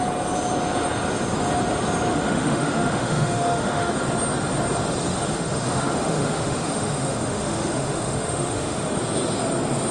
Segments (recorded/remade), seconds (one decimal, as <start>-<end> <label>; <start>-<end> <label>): 0.0-2.1 recorded; 2.1-3.9 remade; 3.9-5.1 recorded; 5.1-9.0 remade; 9.0-9.9 recorded